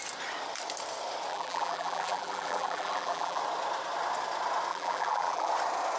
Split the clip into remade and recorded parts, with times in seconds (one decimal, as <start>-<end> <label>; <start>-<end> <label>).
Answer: 0.0-1.3 recorded; 1.3-3.4 remade; 3.4-4.7 recorded; 4.7-5.5 remade; 5.5-6.0 recorded